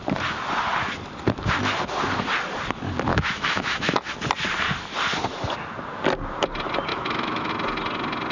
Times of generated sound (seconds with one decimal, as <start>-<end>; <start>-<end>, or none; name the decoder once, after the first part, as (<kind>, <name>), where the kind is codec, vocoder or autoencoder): 3.1-4.1 (autoencoder, DAC-VAE); 6.9-7.5